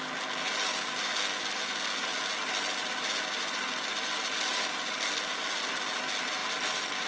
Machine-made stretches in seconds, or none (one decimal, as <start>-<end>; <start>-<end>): none

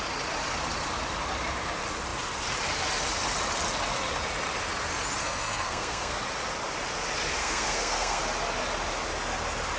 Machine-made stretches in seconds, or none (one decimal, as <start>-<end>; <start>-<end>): 5.2-6.2; 7.4-8.2

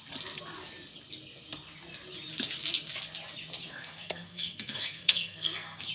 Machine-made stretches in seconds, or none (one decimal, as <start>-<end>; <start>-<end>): 3.7-5.9

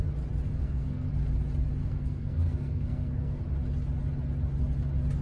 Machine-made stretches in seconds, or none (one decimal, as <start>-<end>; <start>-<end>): 0.6-1.1; 1.8-3.4

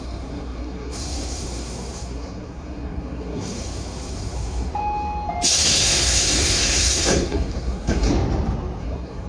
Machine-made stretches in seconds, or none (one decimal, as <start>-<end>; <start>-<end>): 0.0-4.7; 5.5-8.1; 8.8-9.3

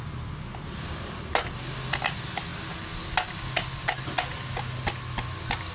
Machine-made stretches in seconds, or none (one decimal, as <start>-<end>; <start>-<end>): none